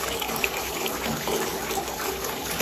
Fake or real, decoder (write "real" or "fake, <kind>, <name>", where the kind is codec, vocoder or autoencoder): fake, codec, DAC